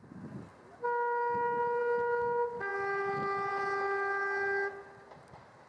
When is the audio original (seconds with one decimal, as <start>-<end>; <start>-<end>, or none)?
0.0-5.7